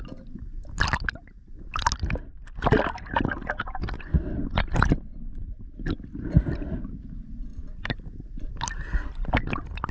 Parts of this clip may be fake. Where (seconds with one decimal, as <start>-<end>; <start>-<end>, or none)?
7.5-8.5